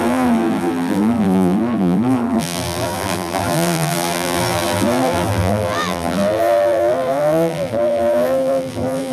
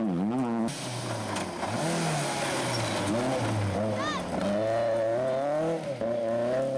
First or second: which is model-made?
first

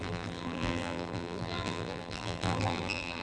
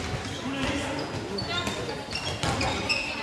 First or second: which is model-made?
first